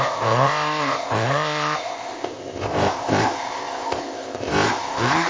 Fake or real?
fake